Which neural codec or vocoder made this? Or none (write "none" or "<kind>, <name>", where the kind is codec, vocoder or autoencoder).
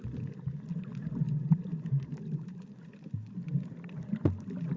none